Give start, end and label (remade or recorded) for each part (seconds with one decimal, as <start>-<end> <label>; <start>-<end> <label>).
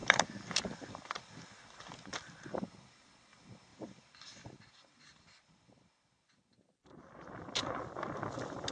0.0-1.2 remade; 1.2-2.1 recorded; 2.1-2.9 remade; 2.9-3.7 recorded; 3.7-4.6 remade; 4.6-8.7 recorded